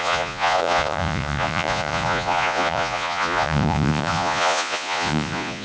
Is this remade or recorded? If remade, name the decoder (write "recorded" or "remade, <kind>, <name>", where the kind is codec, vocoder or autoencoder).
remade, vocoder, Vocos